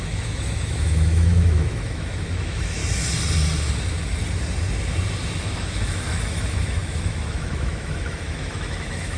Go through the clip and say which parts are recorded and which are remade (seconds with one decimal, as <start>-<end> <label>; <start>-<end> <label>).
0.0-2.8 remade; 2.8-5.4 recorded; 5.4-9.2 remade